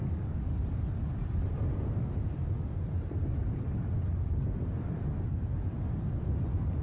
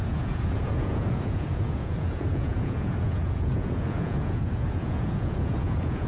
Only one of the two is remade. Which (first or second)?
second